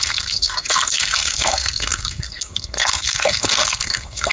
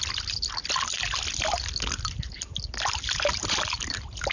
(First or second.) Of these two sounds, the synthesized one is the first